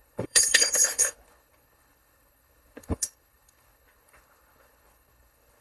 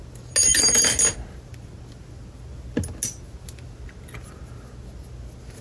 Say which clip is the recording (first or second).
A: second